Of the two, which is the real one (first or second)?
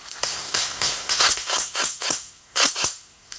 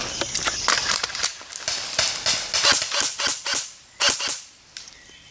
second